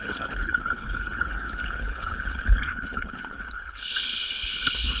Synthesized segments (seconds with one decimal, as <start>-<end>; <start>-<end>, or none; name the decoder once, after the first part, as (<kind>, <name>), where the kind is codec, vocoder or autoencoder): 0.0-5.0 (codec, HILCodec)